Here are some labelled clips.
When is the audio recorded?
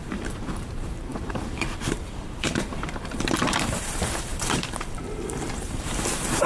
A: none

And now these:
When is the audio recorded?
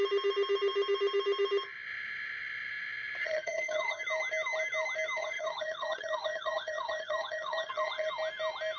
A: 0.0-3.2; 4.0-5.2; 8.1-8.8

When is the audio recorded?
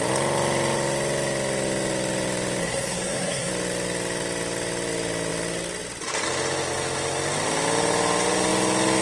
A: 0.0-2.6; 3.5-9.0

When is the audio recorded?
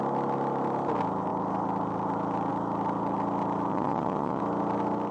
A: 0.0-3.7; 4.4-5.1